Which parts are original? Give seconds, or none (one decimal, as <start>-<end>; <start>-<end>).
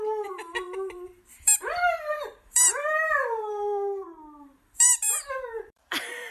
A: none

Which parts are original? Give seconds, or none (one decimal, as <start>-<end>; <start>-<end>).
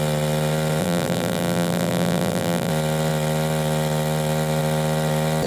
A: 0.0-0.8; 2.7-5.5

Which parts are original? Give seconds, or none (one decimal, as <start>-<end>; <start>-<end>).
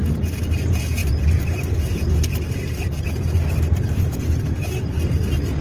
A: 0.0-1.0; 4.0-5.6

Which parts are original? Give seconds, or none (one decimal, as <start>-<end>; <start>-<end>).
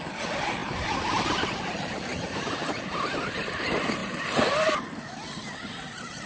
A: 0.0-0.6; 1.7-2.1; 3.6-4.0; 5.5-6.3